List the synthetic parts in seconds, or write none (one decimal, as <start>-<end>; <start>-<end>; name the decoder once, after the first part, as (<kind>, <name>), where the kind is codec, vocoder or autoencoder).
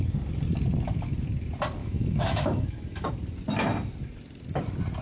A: 1.8-3.1 (autoencoder, DAC-VAE)